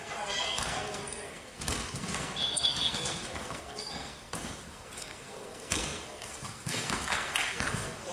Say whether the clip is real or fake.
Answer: fake